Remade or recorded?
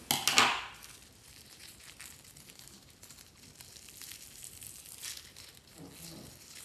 recorded